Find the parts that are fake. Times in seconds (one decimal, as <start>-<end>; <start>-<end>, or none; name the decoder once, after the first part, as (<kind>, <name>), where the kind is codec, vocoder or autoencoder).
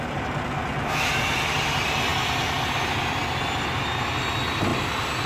0.6-1.6 (vocoder, BigVGAN v2); 4.7-5.3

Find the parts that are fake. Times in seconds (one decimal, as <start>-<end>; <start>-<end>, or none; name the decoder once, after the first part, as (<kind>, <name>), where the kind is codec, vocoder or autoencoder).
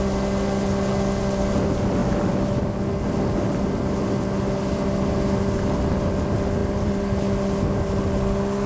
2.0-2.6 (vocoder, BigVGAN v2); 6.6-7.2